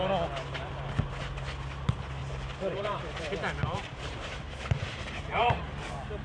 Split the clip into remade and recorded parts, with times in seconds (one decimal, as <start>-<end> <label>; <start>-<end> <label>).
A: 0.0-2.2 recorded; 2.2-5.6 remade; 5.6-6.2 recorded